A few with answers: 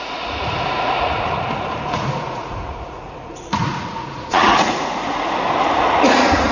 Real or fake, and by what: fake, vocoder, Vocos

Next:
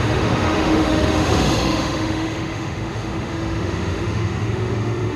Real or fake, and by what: fake, autoencoder, DAC-VAE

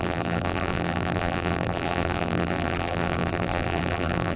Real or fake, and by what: fake, vocoder, BigVGAN v2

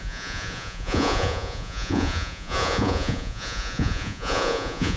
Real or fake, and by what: fake, vocoder, Vocos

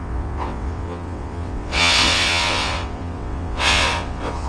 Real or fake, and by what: fake, vocoder, WaveNeXt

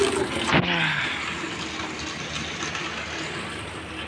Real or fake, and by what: real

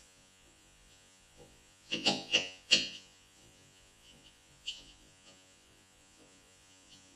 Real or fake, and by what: fake, vocoder, Vocos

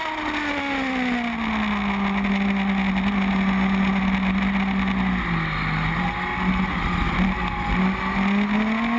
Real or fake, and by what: real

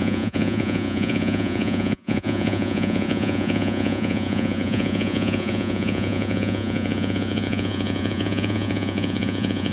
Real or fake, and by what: fake, vocoder, Vocos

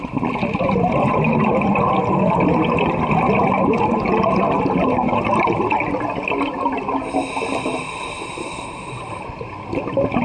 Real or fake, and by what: real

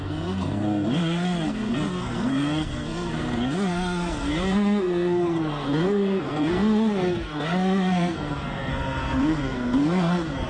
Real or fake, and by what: fake, codec, SNAC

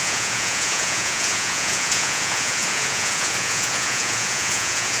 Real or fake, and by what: fake, vocoder, Vocos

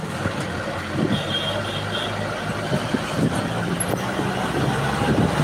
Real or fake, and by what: real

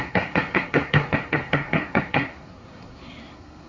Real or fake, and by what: fake, codec, SNAC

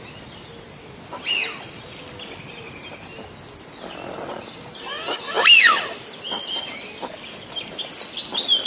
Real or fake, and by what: real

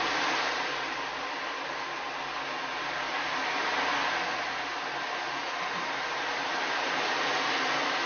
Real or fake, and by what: real